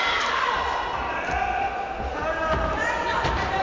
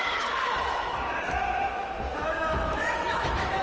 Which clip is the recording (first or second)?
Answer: first